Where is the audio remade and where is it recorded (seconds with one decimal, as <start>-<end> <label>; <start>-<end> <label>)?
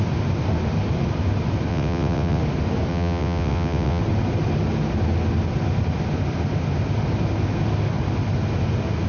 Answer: 0.0-1.7 recorded; 1.7-2.4 remade; 2.4-2.9 recorded; 2.9-4.0 remade; 4.0-9.1 recorded